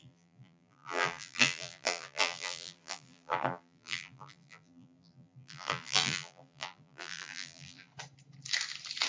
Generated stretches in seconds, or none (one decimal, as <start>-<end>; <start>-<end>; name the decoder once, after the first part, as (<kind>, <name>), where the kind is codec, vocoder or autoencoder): 0.0-7.9 (vocoder, BigVGAN v2)